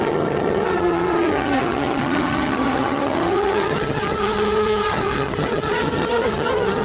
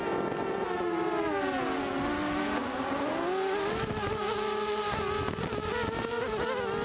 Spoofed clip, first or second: first